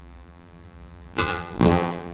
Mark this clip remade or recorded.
remade